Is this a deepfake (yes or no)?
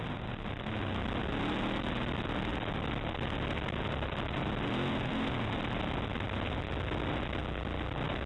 no